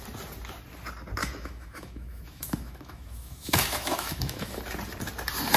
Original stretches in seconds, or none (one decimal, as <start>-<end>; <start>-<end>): 0.0-1.2; 4.6-5.6